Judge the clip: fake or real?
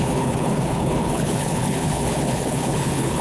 fake